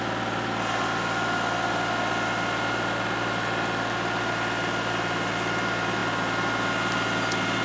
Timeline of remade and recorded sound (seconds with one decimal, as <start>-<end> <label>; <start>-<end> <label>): 0.0-7.6 recorded